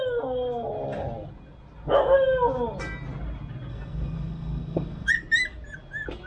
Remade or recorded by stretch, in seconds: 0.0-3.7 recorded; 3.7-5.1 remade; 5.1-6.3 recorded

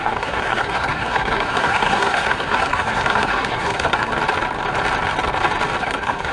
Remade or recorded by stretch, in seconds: 0.0-4.1 remade; 4.1-5.8 recorded; 5.8-6.3 remade

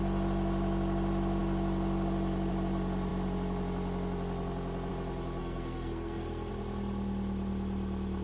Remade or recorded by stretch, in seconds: 0.0-5.4 recorded; 5.4-6.5 remade; 6.5-8.2 recorded

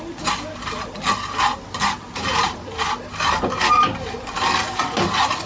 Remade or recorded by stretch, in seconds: 0.0-5.5 recorded

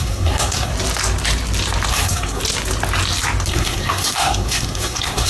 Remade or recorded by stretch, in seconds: 0.0-0.7 remade; 0.7-1.9 recorded; 1.9-2.4 remade; 2.4-3.5 recorded; 3.5-5.3 remade

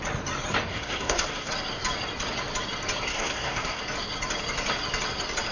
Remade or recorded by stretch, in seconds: 0.0-0.7 recorded; 0.7-1.5 remade; 1.5-3.1 recorded; 3.1-3.8 remade; 3.8-5.5 recorded

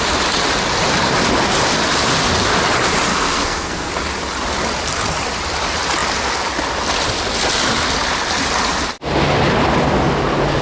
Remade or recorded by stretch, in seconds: 0.0-3.1 recorded; 3.1-3.9 remade; 3.9-10.6 recorded